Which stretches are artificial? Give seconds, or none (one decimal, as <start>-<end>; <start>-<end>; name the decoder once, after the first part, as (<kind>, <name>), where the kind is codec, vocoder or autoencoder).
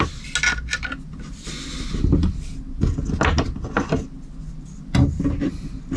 none